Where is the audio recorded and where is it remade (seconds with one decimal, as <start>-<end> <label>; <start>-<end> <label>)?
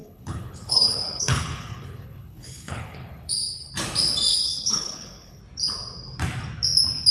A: 0.0-3.7 remade; 3.7-4.3 recorded; 4.3-5.4 remade; 5.4-7.1 recorded